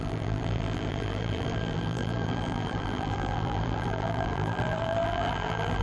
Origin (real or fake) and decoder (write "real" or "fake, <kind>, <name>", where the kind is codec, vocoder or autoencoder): fake, vocoder, BigVGAN v2